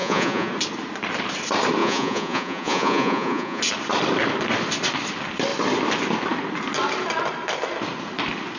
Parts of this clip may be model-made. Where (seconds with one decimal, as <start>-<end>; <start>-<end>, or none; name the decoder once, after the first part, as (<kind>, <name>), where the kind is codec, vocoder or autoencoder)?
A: 0.0-0.5 (vocoder, Vocos); 1.8-3.6